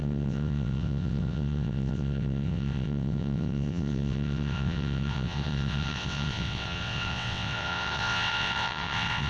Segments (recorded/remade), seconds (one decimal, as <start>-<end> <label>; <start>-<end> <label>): 0.0-9.3 remade